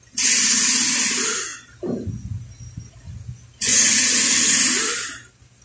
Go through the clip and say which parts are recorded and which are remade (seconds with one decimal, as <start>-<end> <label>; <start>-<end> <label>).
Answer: 0.0-3.7 recorded; 3.7-4.2 remade; 4.2-5.6 recorded